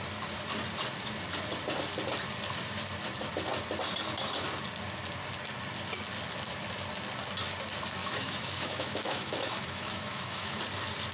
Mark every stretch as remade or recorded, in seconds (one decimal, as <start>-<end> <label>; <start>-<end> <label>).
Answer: 0.0-8.0 recorded; 8.0-10.6 remade; 10.6-11.1 recorded